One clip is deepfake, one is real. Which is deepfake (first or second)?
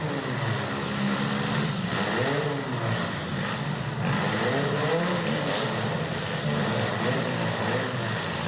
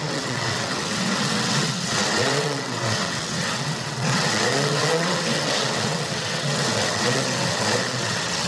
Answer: second